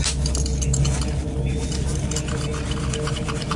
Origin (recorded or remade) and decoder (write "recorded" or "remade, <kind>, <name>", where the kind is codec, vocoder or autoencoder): recorded